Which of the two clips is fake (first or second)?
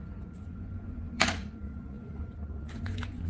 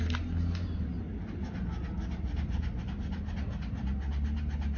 first